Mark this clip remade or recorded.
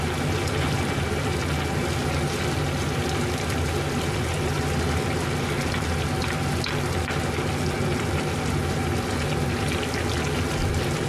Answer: recorded